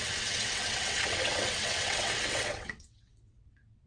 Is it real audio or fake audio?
fake